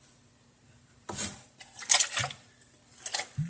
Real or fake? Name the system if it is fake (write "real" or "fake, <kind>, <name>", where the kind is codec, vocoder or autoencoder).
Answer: real